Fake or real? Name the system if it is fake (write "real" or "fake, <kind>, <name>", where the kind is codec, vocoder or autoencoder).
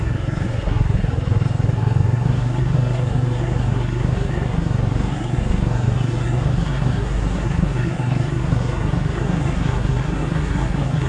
fake, codec, SNAC